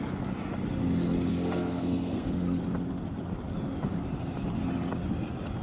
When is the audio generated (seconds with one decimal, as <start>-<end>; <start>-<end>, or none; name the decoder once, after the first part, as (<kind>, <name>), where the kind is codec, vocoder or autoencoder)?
1.3-2.6 (codec, SNAC)